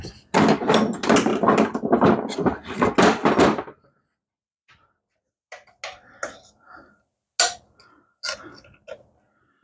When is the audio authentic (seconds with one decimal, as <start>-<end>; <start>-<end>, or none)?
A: 0.0-9.6